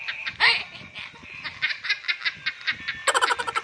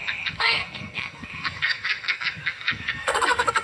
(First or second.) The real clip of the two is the first